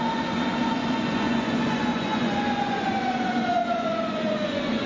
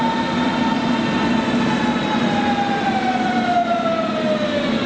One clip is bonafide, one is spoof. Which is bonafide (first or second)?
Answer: second